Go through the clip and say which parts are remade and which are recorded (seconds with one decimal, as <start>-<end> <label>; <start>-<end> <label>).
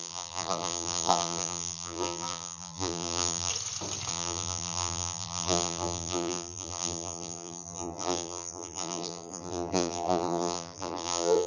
0.0-3.5 remade; 3.5-4.1 recorded; 4.1-11.5 remade